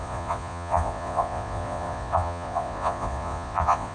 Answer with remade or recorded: remade